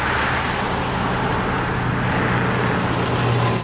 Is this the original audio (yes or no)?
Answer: yes